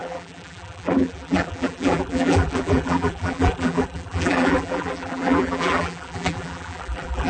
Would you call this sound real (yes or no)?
no